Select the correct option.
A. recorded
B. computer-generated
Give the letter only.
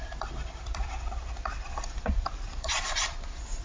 B